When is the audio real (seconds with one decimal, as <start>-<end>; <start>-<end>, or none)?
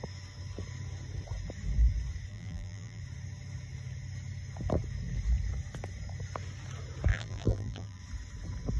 0.0-2.3; 3.0-7.1; 8.0-8.8